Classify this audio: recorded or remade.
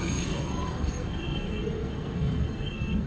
remade